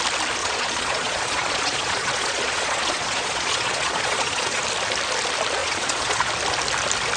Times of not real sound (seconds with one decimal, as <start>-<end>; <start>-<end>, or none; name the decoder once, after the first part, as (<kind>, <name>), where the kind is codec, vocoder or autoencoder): 0.4-4.6 (vocoder, Vocos); 5.6-6.3